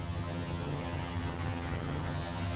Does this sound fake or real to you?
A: fake